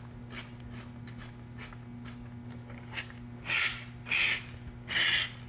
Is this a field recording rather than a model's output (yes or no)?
yes